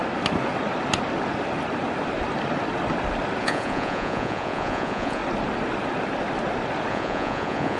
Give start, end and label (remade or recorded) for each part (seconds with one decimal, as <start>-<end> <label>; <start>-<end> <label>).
0.0-3.4 recorded; 3.4-5.2 remade; 5.2-6.9 recorded; 6.9-7.8 remade